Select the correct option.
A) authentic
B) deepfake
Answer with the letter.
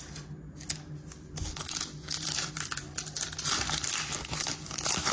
A